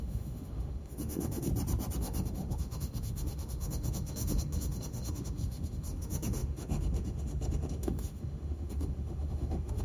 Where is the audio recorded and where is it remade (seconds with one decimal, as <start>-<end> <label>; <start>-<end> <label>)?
0.0-1.5 remade; 1.5-2.0 recorded; 2.0-9.8 remade